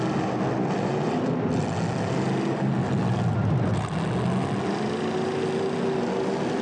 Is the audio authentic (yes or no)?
yes